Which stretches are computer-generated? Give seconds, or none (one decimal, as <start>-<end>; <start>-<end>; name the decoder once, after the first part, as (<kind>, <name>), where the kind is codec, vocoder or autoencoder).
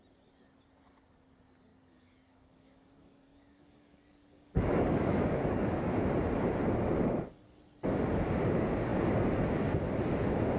1.7-5.9 (codec, DAC)